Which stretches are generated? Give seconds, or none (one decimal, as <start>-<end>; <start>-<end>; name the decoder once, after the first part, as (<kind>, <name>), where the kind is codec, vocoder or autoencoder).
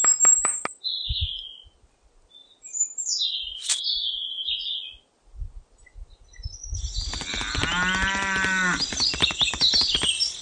none